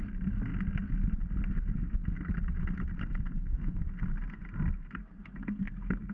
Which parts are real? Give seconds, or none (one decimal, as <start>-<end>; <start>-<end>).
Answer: 0.0-3.0; 3.8-5.0